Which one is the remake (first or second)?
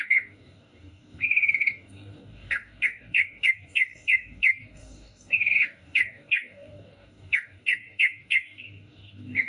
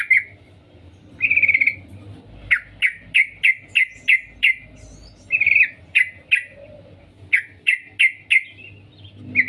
first